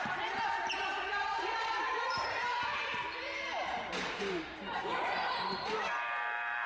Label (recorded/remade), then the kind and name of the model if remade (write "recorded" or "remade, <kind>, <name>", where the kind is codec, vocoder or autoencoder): remade, vocoder, BigVGAN v2